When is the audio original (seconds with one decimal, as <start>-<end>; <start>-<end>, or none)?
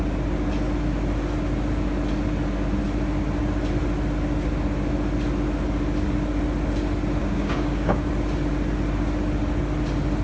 0.0-7.2; 8.1-10.2